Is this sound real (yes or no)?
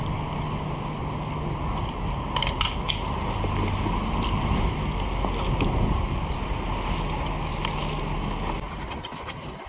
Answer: yes